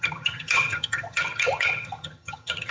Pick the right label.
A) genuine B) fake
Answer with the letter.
B